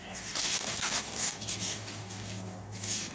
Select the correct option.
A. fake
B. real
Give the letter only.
A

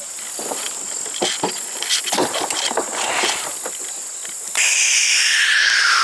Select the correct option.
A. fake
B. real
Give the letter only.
B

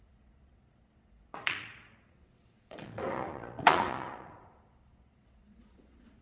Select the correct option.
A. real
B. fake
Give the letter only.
B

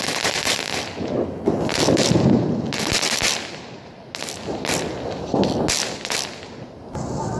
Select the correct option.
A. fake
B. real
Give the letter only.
B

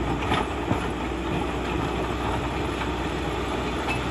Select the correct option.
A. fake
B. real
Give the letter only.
B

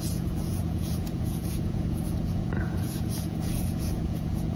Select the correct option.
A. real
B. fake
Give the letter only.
B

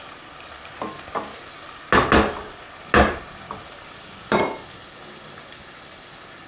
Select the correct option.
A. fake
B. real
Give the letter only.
B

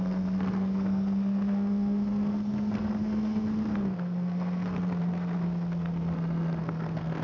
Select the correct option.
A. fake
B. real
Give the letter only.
A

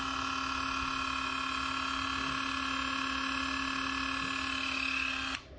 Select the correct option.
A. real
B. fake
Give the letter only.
A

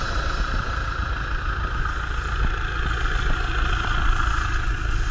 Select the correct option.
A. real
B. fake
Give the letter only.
A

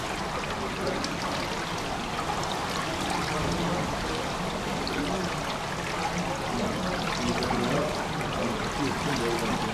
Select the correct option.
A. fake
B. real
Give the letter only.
B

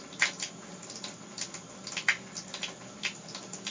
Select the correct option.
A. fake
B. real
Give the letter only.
B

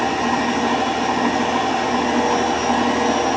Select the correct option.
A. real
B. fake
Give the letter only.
A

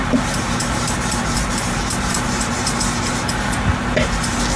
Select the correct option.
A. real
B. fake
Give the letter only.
B